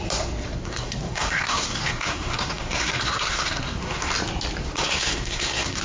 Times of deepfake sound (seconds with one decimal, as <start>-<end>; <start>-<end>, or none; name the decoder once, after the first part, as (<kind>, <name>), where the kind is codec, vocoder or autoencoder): 0.6-4.1 (codec, SNAC); 4.6-5.8